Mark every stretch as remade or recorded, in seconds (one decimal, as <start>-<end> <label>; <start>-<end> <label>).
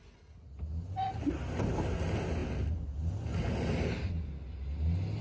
0.0-5.2 recorded